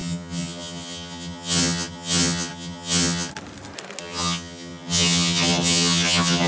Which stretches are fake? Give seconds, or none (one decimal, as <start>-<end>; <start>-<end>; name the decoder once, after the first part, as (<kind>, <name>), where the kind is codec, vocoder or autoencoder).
0.0-3.3 (vocoder, HiFi-GAN); 4.0-6.5